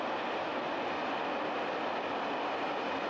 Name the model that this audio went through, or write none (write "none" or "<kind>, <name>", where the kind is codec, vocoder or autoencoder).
none